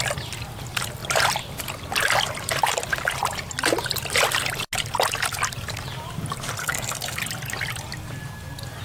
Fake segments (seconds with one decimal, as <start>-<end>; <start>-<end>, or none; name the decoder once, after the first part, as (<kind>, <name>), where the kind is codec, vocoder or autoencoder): 6.6-7.2 (codec, SNAC)